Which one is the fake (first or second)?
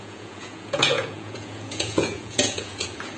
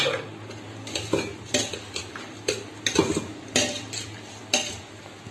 first